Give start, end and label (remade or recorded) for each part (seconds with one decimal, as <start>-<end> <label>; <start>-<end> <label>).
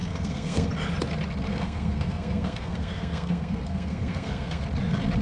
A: 0.0-0.7 remade; 0.7-1.5 recorded; 1.5-4.6 remade; 4.6-5.2 recorded